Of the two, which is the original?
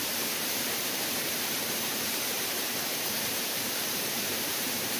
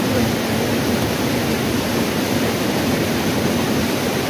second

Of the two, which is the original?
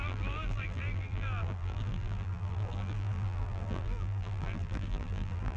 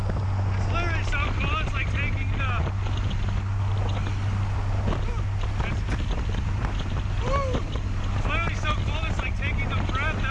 second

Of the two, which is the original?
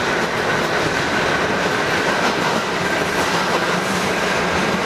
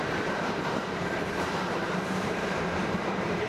first